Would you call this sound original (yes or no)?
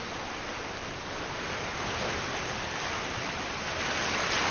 yes